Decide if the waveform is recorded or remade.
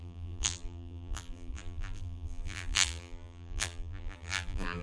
remade